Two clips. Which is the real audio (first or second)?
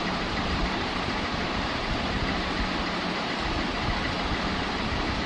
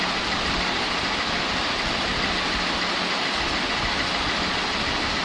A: second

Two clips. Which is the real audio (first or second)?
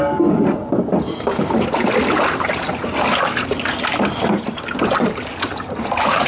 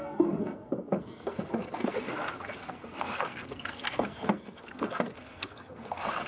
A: first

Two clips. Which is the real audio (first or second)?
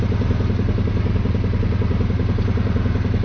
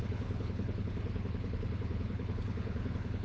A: first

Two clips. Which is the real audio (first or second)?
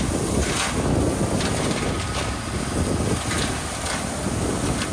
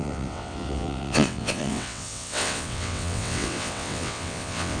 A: first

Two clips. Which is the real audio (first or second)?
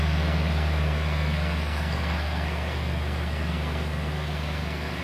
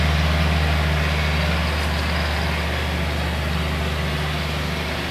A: second